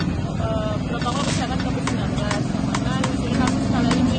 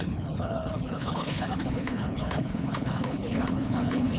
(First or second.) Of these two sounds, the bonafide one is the first